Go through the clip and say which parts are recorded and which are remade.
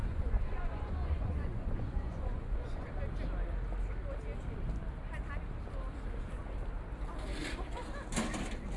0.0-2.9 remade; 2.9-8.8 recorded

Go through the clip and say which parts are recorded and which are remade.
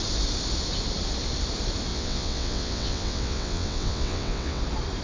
0.0-1.9 recorded; 1.9-4.6 remade; 4.6-5.0 recorded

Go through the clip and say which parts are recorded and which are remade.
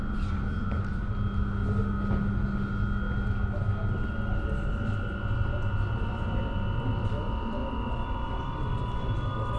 0.0-1.0 remade; 1.0-7.6 recorded; 7.6-8.8 remade; 8.8-9.6 recorded